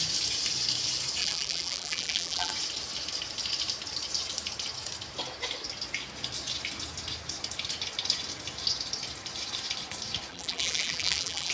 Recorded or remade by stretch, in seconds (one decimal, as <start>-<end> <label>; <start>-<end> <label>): 0.0-1.2 recorded; 1.2-2.5 remade; 2.5-10.3 recorded; 10.3-11.5 remade